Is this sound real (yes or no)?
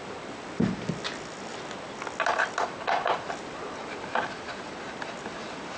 yes